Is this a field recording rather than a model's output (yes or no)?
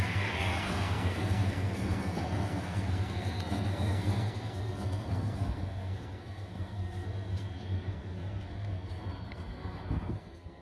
no